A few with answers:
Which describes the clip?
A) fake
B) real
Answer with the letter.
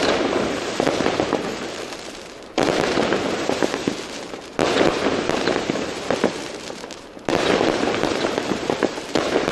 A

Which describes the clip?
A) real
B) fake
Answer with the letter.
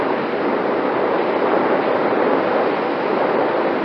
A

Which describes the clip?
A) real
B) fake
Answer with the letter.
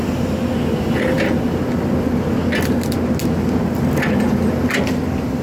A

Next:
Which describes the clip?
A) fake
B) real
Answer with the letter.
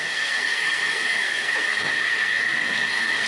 A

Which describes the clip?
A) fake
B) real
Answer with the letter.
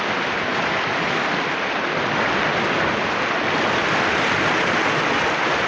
B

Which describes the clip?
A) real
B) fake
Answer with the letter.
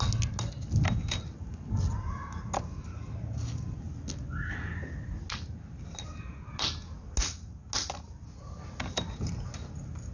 A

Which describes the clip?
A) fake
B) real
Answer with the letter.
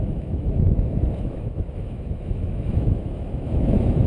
A